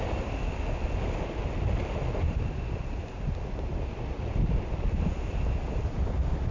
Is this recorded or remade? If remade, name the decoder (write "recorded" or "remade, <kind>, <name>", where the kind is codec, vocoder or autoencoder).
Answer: recorded